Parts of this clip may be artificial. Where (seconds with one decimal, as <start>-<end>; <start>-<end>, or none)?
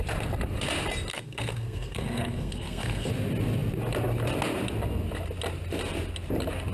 1.1-3.1